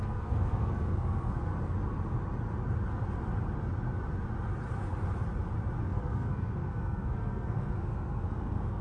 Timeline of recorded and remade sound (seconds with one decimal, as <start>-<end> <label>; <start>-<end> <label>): 0.0-1.5 remade; 1.5-5.8 recorded; 5.8-8.8 remade